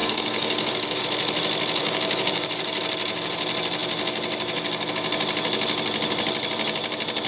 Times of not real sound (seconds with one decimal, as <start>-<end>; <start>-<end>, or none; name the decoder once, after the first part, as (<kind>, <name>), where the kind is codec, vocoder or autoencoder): 0.0-1.0 (codec, DAC); 1.8-2.5